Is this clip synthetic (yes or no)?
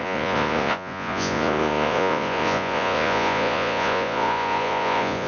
yes